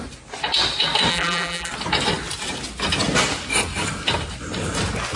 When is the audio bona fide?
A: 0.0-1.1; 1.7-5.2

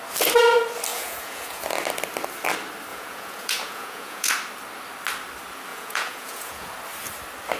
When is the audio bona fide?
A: 0.0-0.9; 1.6-2.9; 4.3-5.7; 6.7-7.6

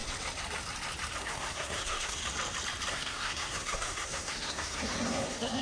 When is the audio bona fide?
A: 0.0-1.2; 2.2-2.9

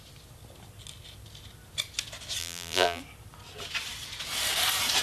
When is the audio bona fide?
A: 0.0-2.4; 3.0-5.0

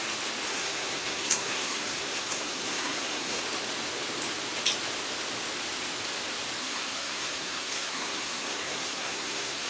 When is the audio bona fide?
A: 0.0-0.5; 3.4-6.6

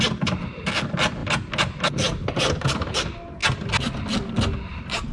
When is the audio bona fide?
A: 0.0-5.1

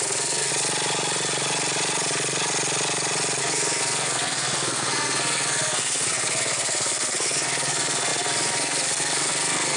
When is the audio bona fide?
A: 0.5-3.4

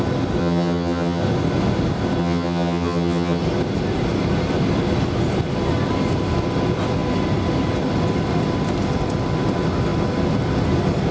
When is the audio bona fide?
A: 0.0-0.4; 1.2-2.2; 3.4-11.1